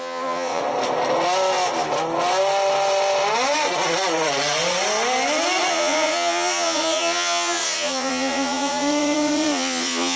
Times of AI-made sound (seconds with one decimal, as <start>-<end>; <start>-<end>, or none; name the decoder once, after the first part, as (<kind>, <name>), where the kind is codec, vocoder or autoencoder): 0.0-0.6 (vocoder, Vocos); 5.7-10.2